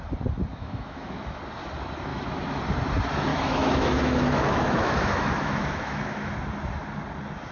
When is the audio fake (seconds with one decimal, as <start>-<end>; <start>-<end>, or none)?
0.5-1.4; 2.1-2.6; 3.3-6.3